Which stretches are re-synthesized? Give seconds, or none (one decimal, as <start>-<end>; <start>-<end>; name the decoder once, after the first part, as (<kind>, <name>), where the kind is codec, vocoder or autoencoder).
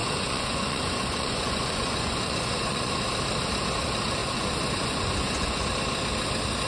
0.0-2.9 (vocoder, Vocos); 4.2-5.7